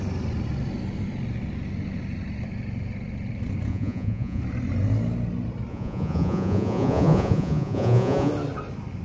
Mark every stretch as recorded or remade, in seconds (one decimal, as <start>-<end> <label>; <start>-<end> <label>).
0.0-3.7 recorded; 3.7-4.4 remade; 4.4-5.7 recorded; 5.7-8.3 remade; 8.3-9.0 recorded